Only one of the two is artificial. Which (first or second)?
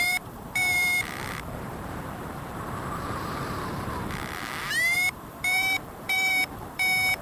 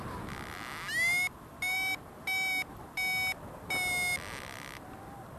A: first